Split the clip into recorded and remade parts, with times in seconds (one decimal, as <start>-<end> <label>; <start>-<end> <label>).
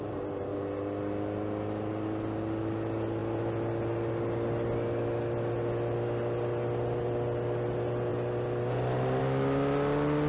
0.0-10.3 recorded